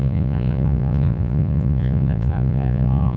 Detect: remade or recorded remade